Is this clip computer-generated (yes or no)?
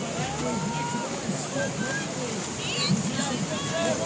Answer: no